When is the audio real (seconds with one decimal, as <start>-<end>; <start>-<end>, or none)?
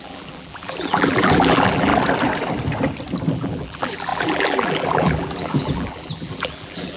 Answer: 1.9-3.3